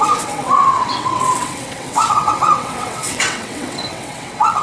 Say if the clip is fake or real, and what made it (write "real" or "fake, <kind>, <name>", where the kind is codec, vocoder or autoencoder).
fake, vocoder, WaveNeXt